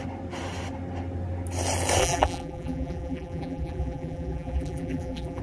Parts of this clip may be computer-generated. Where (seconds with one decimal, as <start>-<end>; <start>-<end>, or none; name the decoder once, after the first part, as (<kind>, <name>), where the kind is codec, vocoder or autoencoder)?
2.0-5.4 (vocoder, BigVGAN v2)